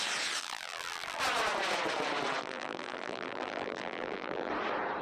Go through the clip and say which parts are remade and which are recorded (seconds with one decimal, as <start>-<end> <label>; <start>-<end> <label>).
0.0-0.4 recorded; 0.4-1.2 remade; 1.2-2.4 recorded; 2.4-4.5 remade; 4.5-5.0 recorded